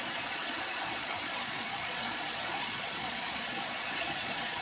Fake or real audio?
fake